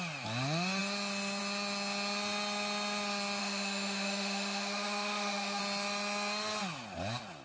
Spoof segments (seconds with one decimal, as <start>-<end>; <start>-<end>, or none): 3.4-5.6